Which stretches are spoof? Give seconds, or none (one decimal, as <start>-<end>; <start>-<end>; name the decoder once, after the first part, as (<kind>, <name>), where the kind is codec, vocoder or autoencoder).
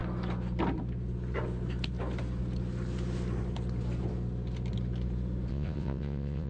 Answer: 5.5-6.5 (vocoder, WaveNeXt)